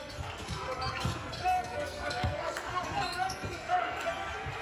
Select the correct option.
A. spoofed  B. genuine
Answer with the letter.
A